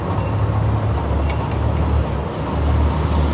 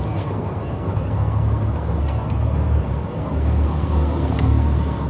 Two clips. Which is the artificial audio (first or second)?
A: second